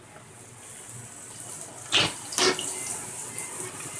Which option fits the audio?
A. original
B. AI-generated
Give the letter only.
A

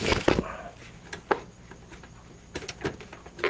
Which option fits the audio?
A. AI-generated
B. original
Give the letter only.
B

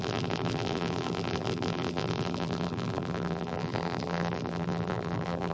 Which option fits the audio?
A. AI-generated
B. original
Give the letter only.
A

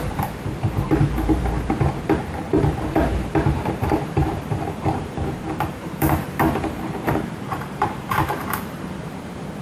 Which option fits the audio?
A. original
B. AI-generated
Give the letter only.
B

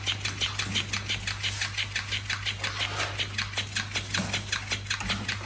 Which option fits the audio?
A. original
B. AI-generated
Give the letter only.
A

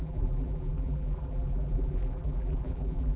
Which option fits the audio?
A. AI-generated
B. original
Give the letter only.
A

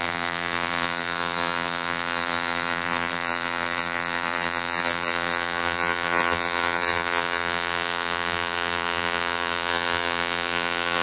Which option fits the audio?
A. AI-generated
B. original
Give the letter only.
A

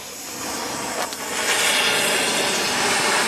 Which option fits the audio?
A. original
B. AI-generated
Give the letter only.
A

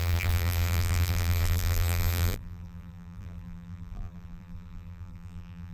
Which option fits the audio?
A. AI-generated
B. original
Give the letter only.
A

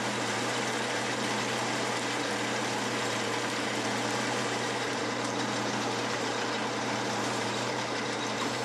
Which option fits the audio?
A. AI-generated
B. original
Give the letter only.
A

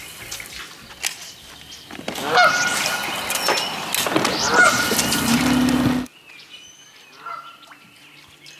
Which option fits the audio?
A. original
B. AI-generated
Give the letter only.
A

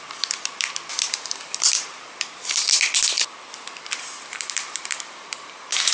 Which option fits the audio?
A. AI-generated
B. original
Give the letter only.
A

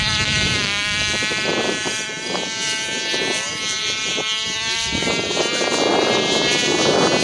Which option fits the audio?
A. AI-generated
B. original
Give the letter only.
A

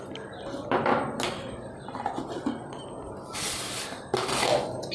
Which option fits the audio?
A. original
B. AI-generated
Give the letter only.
A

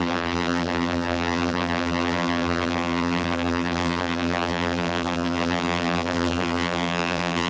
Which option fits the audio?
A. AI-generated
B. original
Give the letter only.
A